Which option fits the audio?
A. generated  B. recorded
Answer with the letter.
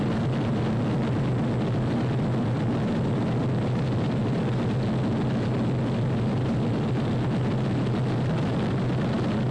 B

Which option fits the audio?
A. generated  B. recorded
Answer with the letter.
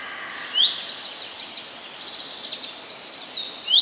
B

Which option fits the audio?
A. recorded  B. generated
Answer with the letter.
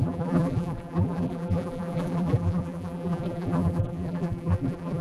B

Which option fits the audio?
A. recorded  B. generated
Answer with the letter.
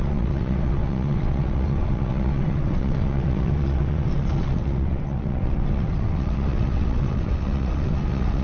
B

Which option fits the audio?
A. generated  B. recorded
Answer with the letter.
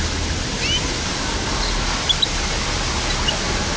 B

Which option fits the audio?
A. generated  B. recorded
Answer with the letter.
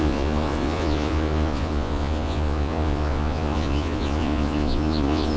A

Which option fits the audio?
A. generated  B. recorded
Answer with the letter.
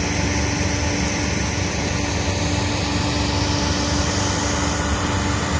B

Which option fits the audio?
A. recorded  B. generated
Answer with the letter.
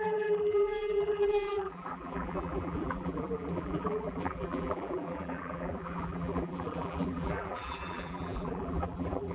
B